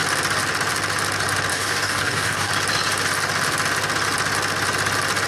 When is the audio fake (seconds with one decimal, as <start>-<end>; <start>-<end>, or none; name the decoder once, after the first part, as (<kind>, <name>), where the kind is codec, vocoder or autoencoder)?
1.5-2.5 (codec, DAC)